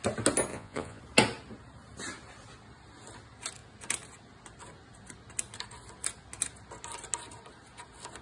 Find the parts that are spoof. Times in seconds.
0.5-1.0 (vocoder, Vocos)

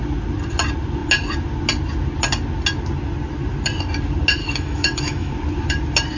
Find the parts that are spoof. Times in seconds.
4.4-5.3 (autoencoder, DAC-VAE)

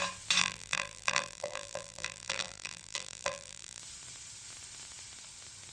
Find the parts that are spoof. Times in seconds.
0.4-3.8 (vocoder, BigVGAN v2)

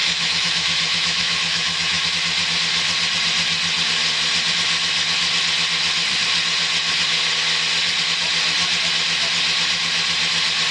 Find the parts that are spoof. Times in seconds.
0.0-2.1 (autoencoder, DAC-VAE)

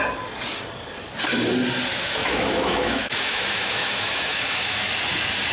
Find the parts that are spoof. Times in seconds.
1.9-4.9 (autoencoder, DAC-VAE)

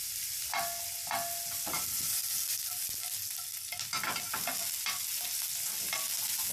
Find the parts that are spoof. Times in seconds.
none

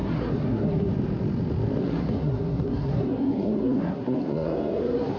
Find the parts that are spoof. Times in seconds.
0.0-0.9 (codec, SNAC); 1.8-5.2